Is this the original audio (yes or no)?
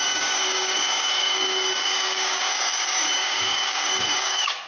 no